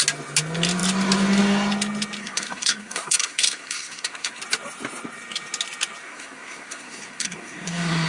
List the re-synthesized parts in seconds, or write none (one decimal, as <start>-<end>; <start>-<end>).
2.2-4.4; 6.0-8.1

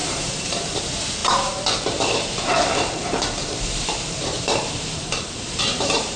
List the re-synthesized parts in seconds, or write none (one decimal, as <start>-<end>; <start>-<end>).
0.0-6.2

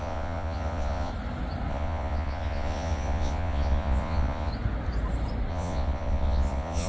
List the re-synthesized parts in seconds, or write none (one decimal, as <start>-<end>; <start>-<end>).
0.0-1.1; 1.7-4.5; 5.5-6.9

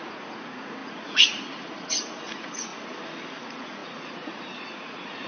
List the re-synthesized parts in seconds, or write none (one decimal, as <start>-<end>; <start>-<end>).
0.0-2.7; 3.3-5.3